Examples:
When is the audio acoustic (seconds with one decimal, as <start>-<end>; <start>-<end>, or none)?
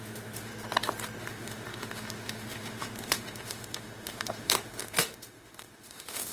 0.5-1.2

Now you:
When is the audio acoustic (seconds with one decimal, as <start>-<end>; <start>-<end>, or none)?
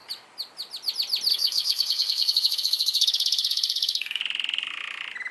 0.0-1.3; 4.2-5.3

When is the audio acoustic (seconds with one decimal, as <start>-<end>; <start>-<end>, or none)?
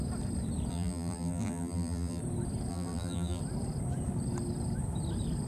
0.0-0.7; 2.2-2.7; 3.4-5.5